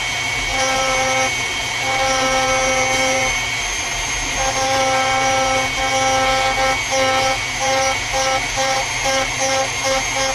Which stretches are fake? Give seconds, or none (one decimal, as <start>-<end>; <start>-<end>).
0.0-5.8; 7.2-10.3